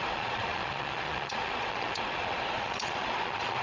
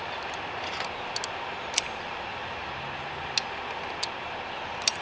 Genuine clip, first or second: second